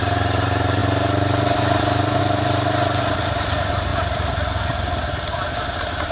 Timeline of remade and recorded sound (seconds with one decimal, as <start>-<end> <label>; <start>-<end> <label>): 0.0-6.1 recorded

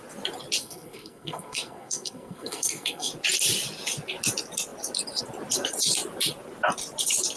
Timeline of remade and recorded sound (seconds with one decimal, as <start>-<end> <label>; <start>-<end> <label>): 0.0-0.6 recorded; 0.6-3.1 remade; 3.1-7.4 recorded